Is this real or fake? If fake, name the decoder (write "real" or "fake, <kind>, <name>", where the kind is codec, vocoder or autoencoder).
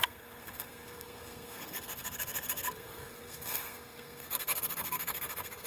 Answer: fake, codec, SNAC